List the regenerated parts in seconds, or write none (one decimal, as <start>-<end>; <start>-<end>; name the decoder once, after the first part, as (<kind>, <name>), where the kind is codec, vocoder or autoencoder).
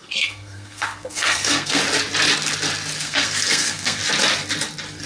0.0-1.8 (codec, SNAC); 3.0-4.0